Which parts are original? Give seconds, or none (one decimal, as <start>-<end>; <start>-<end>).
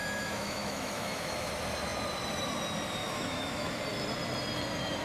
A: 1.5-3.0; 3.8-5.0